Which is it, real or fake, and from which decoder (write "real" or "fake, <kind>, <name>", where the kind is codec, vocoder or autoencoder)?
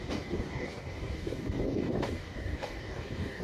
fake, codec, DAC